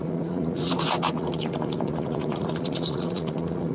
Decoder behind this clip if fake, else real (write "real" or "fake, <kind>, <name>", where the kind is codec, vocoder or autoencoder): fake, vocoder, Vocos